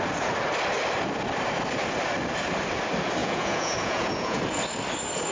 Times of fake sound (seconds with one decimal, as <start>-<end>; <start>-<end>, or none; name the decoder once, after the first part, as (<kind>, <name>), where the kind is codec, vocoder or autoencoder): 3.2-4.4 (vocoder, Vocos)